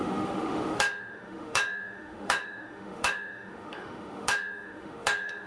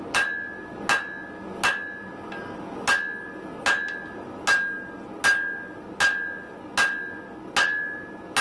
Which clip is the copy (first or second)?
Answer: first